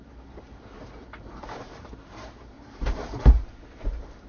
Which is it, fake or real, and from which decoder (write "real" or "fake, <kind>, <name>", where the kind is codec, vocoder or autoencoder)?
fake, vocoder, BigVGAN v2